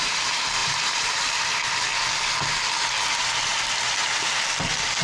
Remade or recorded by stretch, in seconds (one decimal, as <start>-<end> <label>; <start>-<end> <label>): 0.0-0.6 recorded; 0.6-1.5 remade; 1.5-3.5 recorded; 3.5-5.0 remade